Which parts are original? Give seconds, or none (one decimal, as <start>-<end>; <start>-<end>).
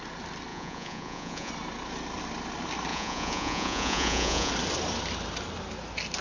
0.0-0.5; 1.5-2.9; 4.5-6.2